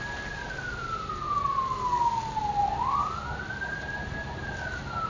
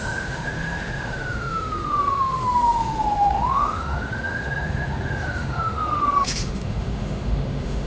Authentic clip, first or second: first